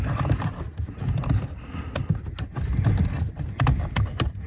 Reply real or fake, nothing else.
real